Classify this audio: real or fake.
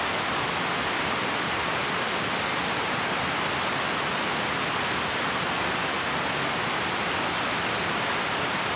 real